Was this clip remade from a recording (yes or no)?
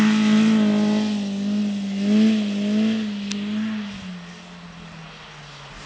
no